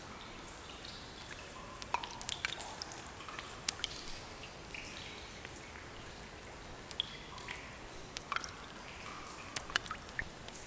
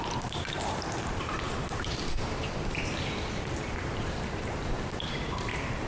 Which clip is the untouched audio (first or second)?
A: first